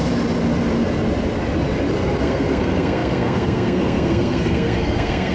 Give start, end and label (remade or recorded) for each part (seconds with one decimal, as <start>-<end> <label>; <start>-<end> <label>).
0.0-2.2 recorded; 2.2-5.3 remade